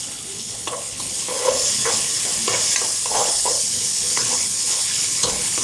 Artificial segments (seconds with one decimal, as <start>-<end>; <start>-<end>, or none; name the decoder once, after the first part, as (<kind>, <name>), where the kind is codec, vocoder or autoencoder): 0.0-2.1 (codec, HILCodec); 3.1-5.6